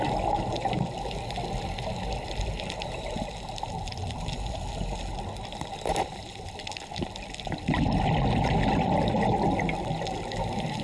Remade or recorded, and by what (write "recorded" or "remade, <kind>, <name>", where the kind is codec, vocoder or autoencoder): recorded